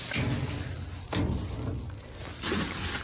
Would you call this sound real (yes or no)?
yes